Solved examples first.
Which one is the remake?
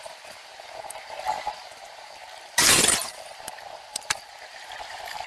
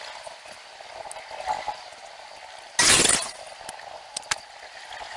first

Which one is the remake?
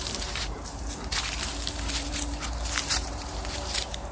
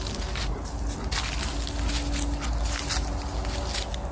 first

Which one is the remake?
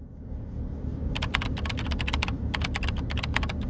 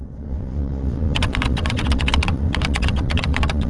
second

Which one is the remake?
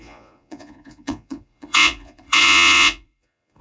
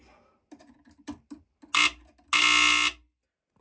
first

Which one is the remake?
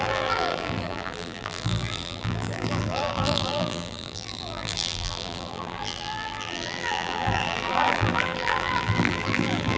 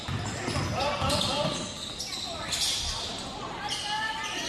first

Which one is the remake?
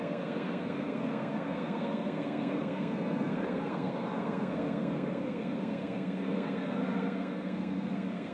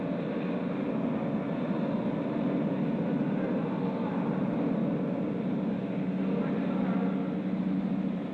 first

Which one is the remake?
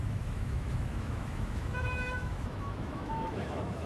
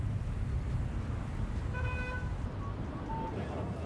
first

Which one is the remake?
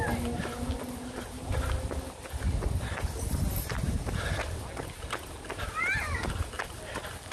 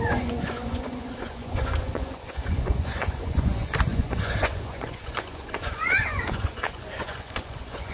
second